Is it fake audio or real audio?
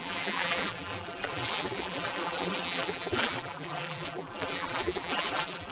fake